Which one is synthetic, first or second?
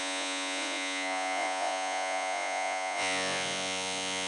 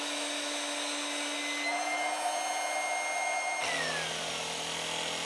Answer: first